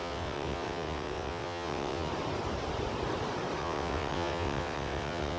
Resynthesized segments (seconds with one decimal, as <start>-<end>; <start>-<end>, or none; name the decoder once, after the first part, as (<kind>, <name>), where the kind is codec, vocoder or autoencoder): 0.0-2.1 (vocoder, WaveNeXt); 3.6-5.4